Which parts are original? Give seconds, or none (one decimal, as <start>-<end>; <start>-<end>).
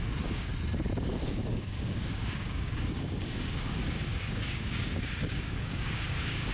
0.5-1.4